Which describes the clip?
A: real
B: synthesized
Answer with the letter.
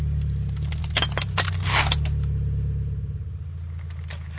A